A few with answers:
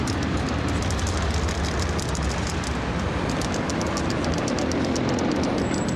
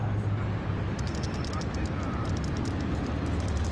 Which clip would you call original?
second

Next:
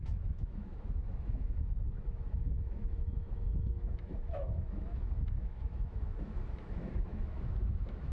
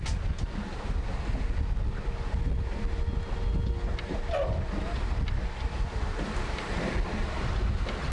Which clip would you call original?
second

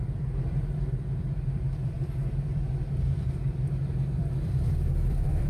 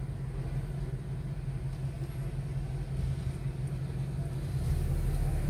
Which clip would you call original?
second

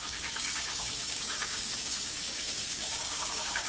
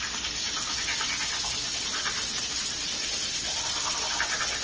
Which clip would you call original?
second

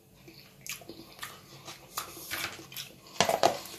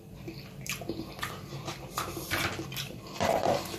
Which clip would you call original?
first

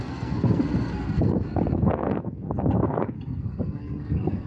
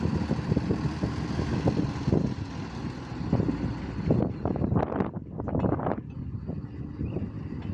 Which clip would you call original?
second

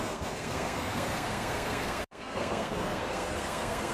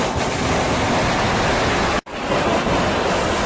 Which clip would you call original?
second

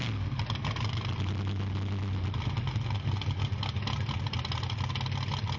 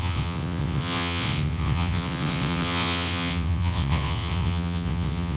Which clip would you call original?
first